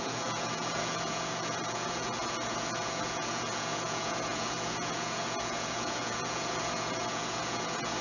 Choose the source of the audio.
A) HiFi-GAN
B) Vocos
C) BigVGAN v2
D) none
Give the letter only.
B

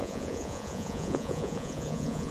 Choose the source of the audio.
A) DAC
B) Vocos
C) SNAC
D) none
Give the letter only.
B